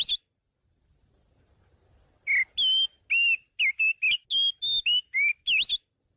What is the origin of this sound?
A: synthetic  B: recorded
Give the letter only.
B